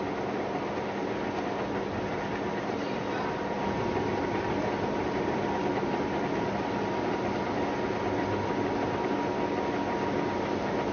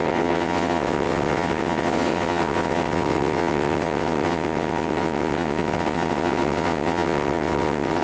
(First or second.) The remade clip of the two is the second